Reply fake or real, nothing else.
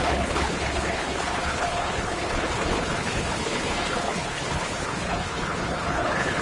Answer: fake